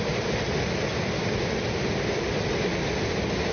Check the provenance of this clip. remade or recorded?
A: recorded